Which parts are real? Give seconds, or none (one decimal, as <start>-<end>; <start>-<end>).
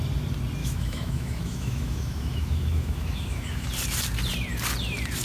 0.0-0.6; 3.7-5.2